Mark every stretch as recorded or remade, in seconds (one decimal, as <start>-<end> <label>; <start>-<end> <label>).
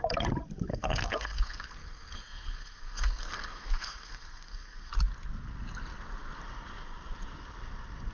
0.0-0.7 recorded; 0.7-4.9 remade; 4.9-8.1 recorded